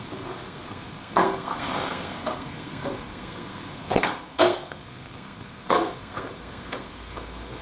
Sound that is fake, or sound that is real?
fake